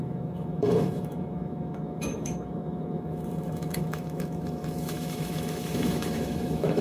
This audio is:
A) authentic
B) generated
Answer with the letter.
B